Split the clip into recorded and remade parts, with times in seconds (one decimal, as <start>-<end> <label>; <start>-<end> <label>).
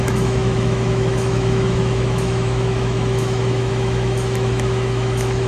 0.0-5.5 remade